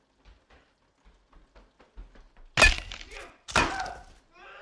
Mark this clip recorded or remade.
recorded